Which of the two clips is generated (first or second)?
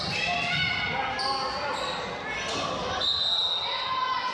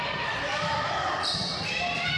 second